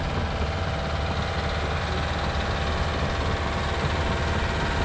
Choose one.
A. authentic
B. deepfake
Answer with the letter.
A